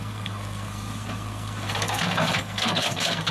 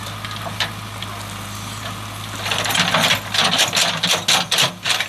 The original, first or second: second